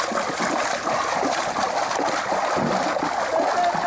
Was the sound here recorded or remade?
recorded